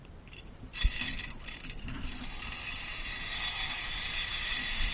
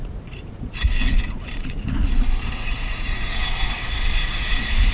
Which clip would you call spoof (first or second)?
second